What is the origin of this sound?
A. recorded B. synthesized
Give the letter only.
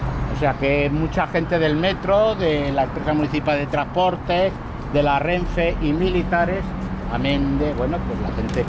A